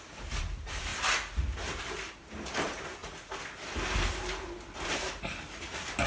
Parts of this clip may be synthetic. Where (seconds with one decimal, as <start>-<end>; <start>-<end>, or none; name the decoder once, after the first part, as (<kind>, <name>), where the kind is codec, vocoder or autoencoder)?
0.0-0.9 (vocoder, BigVGAN v2); 1.8-3.0; 4.9-6.1

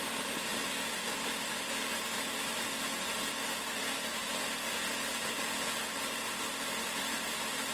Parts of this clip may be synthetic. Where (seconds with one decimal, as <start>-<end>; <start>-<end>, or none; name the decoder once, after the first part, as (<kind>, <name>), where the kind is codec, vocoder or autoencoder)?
4.4-6.0 (vocoder, BigVGAN v2)

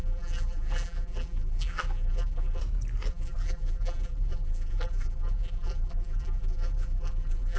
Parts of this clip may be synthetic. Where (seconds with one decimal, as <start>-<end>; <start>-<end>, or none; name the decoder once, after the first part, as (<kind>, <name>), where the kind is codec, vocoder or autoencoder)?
0.0-2.6 (vocoder, BigVGAN v2); 3.1-7.6

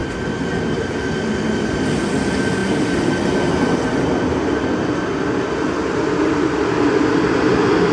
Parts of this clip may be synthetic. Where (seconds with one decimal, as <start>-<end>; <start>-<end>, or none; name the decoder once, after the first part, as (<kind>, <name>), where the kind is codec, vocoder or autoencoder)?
none

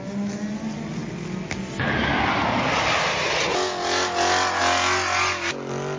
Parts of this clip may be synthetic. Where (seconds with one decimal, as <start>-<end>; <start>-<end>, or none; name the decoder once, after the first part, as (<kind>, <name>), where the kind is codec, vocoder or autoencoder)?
none

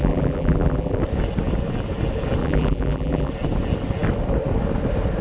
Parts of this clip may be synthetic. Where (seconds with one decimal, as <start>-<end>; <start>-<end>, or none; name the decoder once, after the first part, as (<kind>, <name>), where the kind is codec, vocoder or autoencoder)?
0.0-1.0 (vocoder, BigVGAN v2); 2.4-3.3

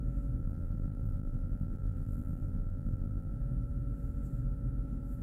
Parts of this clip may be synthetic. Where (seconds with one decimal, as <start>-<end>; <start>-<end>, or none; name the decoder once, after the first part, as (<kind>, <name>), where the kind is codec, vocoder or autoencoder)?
0.4-3.3 (vocoder, BigVGAN v2)